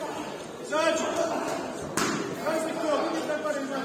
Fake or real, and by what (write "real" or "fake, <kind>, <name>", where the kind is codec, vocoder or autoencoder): real